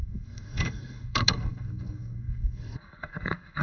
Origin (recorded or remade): remade